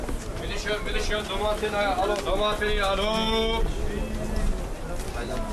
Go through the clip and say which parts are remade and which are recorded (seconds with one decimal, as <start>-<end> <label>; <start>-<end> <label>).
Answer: 0.0-5.5 recorded